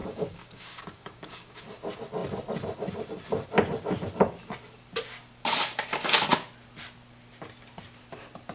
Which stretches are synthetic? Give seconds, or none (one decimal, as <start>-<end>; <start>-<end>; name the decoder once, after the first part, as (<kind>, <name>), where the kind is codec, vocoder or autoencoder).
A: 0.0-1.6 (codec, DAC)